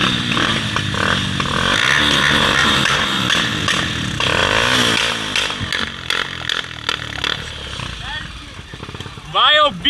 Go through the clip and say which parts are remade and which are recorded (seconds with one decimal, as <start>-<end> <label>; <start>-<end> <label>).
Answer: 0.0-2.6 recorded; 2.6-3.2 remade; 3.2-9.9 recorded